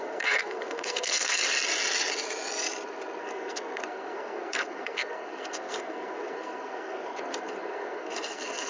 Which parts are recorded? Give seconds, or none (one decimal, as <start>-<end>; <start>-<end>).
1.4-3.2